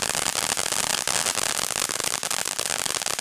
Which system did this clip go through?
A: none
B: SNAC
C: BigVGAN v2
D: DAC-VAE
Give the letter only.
A